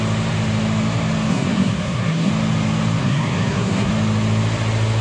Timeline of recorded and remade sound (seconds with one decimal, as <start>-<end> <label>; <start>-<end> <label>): 0.0-1.3 recorded; 1.3-2.3 remade; 2.3-3.0 recorded; 3.0-3.9 remade; 3.9-5.0 recorded